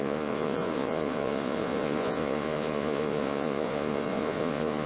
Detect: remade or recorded remade